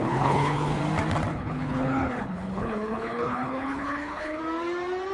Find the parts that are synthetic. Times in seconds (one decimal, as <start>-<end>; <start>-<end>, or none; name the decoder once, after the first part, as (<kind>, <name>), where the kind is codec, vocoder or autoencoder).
0.0-0.8 (codec, HILCodec); 1.3-4.4